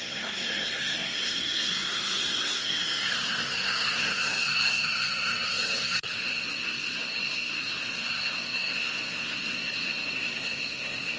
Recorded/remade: remade